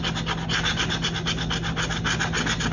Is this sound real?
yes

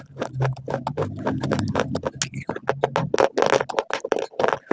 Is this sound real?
yes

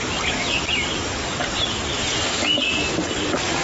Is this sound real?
yes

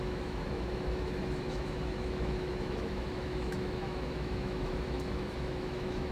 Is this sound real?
no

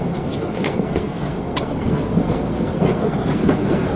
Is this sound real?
no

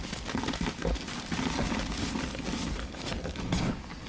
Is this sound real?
yes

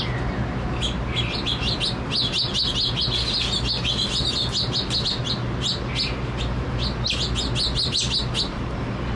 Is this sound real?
yes